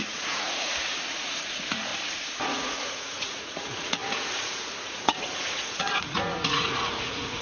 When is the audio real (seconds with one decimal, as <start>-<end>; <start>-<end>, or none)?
1.9-2.5